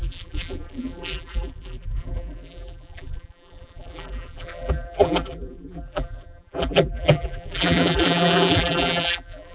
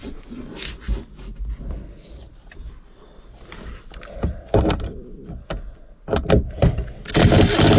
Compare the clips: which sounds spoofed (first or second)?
first